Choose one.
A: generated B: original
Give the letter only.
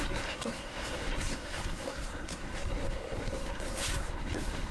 A